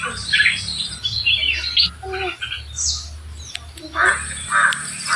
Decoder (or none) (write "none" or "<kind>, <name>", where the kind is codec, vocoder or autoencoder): none